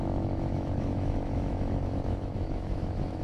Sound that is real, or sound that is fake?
fake